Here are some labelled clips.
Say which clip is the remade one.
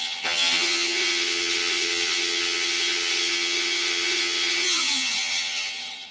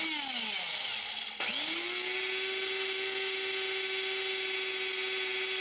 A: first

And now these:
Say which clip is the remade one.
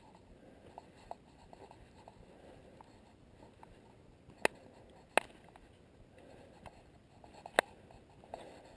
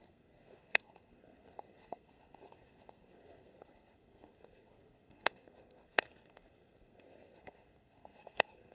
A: second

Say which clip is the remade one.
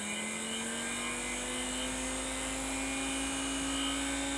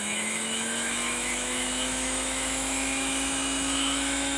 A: second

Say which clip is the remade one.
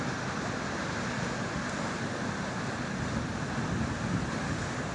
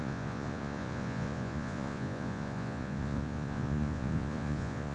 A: second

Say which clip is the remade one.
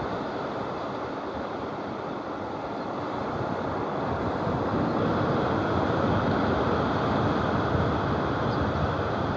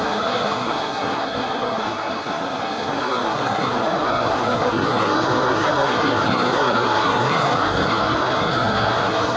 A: second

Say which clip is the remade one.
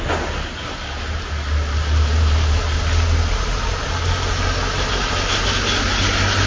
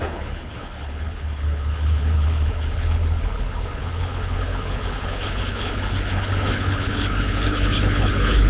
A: second